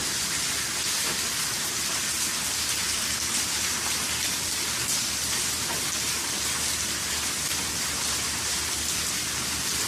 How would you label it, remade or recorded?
recorded